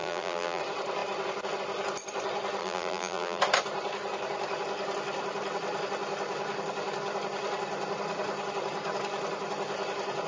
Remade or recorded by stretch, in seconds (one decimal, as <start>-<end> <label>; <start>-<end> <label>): 0.0-0.6 remade; 0.6-2.6 recorded; 2.6-3.4 remade; 3.4-10.3 recorded